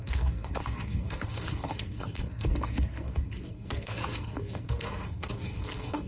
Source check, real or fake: fake